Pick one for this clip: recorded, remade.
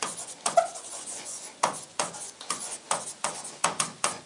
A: remade